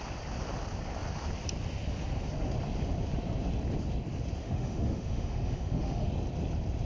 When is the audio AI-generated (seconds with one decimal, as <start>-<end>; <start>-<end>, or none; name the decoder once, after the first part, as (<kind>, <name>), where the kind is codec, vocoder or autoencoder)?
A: 4.4-6.1 (autoencoder, DAC-VAE)